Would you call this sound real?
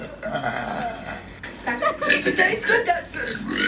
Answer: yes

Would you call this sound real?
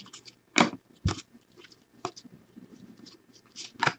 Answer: no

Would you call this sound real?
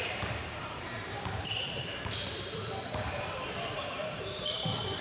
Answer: no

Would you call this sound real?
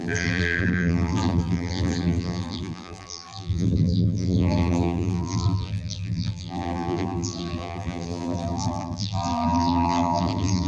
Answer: no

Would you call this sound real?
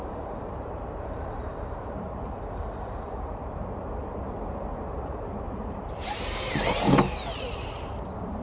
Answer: no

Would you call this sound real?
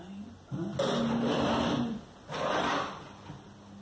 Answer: yes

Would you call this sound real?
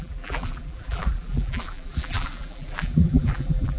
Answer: no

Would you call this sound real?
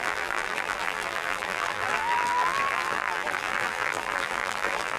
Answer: no